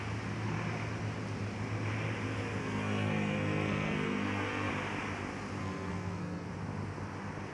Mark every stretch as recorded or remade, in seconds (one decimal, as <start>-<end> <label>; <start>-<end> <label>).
0.0-2.6 recorded; 2.6-4.7 remade; 4.7-5.6 recorded; 5.6-6.5 remade; 6.5-7.5 recorded